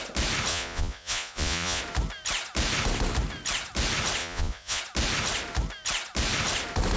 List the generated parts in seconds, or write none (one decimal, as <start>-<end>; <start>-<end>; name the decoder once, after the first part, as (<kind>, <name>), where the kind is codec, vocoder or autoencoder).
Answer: 0.5-1.8 (vocoder, Vocos); 4.2-4.8